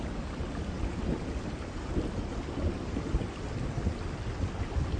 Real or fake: real